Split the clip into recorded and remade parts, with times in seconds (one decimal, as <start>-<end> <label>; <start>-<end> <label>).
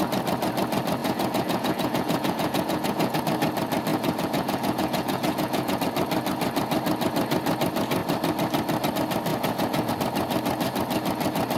0.0-1.0 recorded; 1.0-3.2 remade; 3.2-3.9 recorded; 3.9-5.8 remade; 5.8-9.3 recorded; 9.3-9.9 remade; 9.9-11.6 recorded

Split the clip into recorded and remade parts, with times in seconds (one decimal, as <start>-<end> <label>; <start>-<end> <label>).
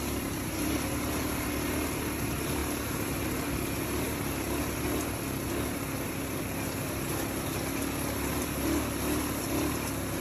0.0-10.2 recorded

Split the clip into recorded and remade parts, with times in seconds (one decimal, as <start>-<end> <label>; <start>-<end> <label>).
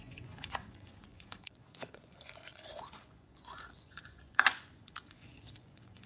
0.0-6.1 remade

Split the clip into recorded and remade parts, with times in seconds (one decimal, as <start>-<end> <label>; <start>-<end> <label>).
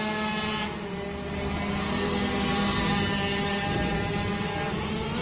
0.0-5.2 recorded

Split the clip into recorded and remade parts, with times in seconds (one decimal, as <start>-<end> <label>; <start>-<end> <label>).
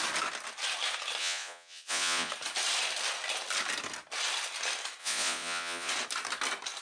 0.0-1.2 recorded; 1.2-2.3 remade; 2.3-5.0 recorded; 5.0-5.9 remade; 5.9-6.8 recorded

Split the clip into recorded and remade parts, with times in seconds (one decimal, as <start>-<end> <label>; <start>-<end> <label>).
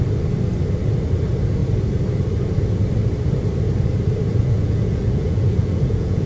0.0-4.3 recorded; 4.3-6.3 remade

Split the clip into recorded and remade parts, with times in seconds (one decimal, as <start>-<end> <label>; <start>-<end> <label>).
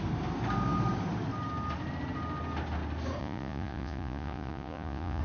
0.0-3.2 recorded; 3.2-5.2 remade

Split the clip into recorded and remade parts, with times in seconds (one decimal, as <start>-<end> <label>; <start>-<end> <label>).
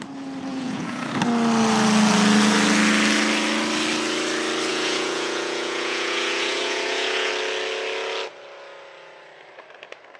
0.0-0.5 recorded; 0.5-1.1 remade; 1.1-4.7 recorded; 4.7-7.3 remade; 7.3-10.2 recorded